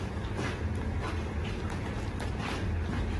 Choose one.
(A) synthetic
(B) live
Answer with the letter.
A